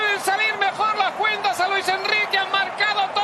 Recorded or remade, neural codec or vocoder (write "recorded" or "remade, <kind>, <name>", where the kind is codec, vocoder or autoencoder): recorded